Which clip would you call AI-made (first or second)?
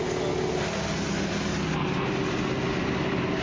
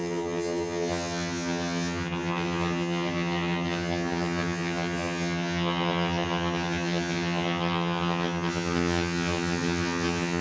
second